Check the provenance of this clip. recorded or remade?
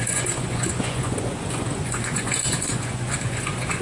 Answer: remade